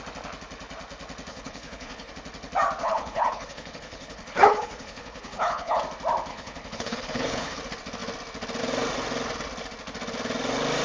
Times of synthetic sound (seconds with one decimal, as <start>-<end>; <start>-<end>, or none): 1.3-2.1; 2.8-5.8; 6.3-7.6